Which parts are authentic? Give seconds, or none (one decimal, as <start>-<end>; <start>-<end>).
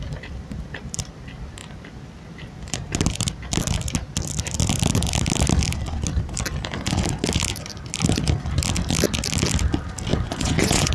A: 0.0-10.1